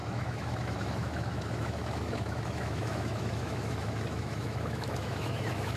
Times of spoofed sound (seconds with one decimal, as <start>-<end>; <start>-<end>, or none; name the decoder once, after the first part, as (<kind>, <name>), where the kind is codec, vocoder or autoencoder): 0.0-5.8 (autoencoder, DAC-VAE)